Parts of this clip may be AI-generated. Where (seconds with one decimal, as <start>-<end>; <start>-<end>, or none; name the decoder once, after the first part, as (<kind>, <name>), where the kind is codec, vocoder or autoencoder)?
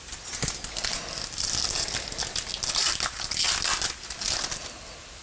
none